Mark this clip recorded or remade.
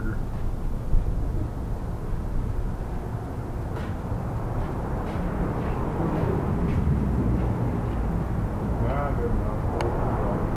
recorded